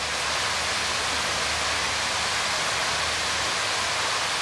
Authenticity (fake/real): real